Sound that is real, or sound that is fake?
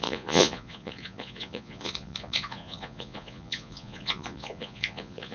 fake